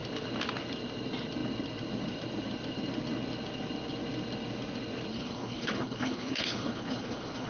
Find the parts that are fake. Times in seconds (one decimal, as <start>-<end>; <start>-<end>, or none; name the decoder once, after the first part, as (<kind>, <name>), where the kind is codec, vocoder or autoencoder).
5.1-7.5 (codec, HILCodec)